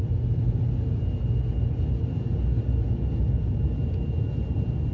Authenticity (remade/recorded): recorded